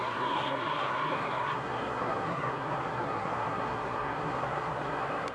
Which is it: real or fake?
fake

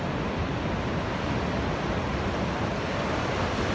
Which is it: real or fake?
real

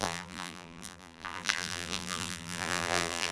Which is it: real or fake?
fake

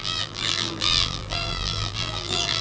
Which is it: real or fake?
fake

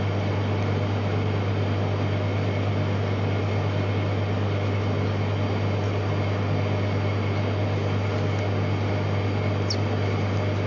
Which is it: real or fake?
real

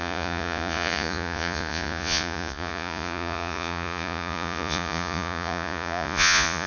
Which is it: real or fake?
fake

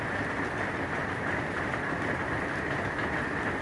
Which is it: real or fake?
real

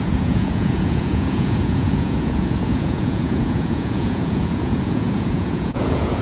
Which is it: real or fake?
fake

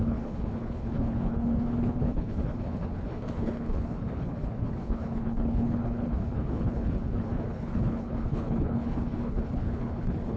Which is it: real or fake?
fake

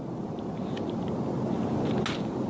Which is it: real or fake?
real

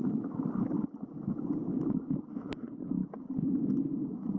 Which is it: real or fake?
real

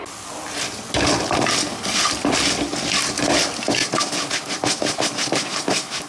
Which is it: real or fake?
real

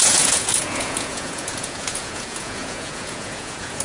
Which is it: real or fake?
fake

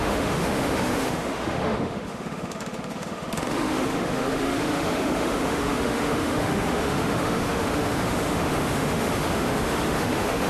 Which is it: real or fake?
fake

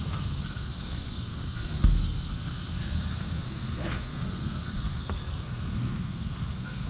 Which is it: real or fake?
fake